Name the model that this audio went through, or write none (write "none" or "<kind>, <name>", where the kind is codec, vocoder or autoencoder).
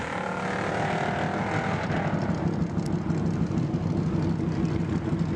none